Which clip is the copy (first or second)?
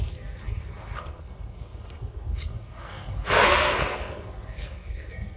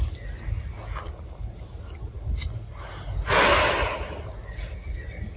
first